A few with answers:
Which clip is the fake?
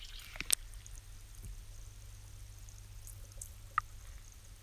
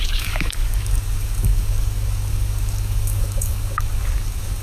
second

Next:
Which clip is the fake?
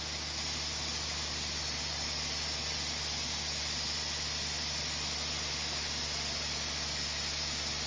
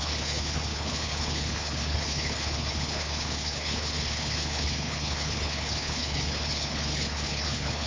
second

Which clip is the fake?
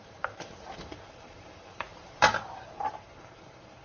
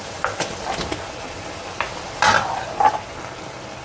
first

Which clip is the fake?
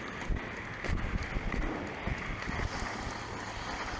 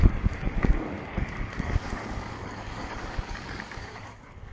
second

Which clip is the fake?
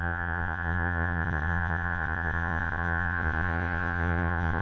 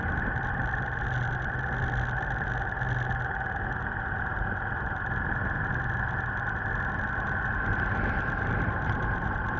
first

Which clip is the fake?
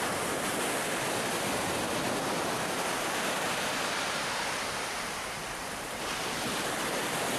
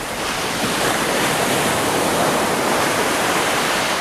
second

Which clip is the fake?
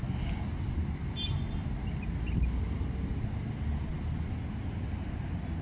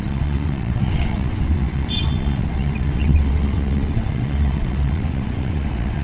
second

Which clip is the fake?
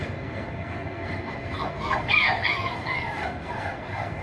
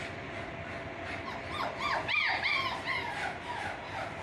first